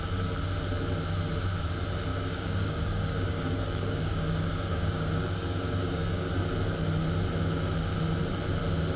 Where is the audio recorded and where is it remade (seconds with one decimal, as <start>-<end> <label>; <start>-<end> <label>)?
0.0-2.1 recorded; 2.1-6.4 remade; 6.4-9.0 recorded